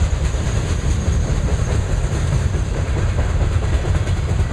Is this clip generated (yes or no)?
yes